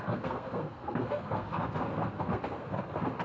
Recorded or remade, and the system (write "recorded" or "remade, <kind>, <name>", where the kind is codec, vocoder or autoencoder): remade, codec, SNAC